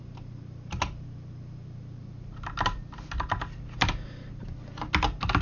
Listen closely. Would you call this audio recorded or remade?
recorded